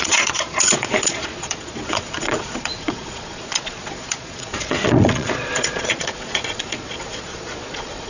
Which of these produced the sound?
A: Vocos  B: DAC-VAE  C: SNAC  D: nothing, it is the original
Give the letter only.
A